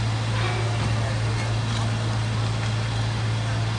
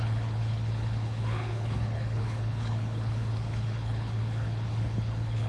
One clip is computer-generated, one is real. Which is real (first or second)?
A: first